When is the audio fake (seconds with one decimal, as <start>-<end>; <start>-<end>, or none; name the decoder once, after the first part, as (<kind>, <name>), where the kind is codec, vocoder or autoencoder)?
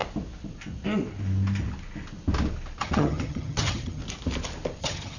2.8-4.0 (vocoder, HiFi-GAN); 4.8-5.2